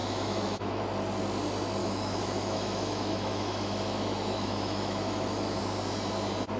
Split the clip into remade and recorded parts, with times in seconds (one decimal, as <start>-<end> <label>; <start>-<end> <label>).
0.0-0.8 remade; 0.8-1.8 recorded; 1.8-5.6 remade; 5.6-6.6 recorded